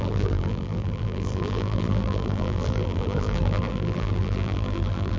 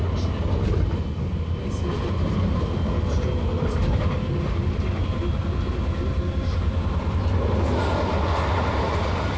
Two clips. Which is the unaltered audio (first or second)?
second